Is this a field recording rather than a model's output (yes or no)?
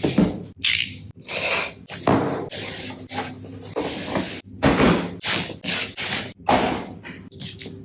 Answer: yes